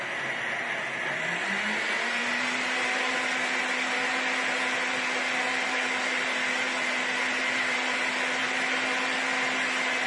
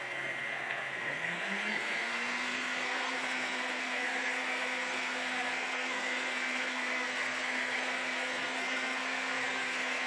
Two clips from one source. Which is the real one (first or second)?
first